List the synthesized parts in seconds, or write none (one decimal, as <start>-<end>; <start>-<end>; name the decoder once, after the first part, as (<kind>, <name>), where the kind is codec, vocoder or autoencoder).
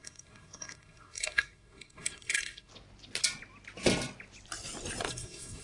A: 0.0-2.7 (codec, SNAC); 5.1-5.6